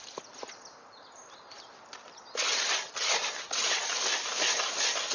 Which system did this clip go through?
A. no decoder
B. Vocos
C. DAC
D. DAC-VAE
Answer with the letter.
A